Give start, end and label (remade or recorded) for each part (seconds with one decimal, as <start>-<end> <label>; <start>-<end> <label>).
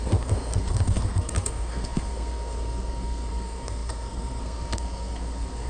0.0-5.7 remade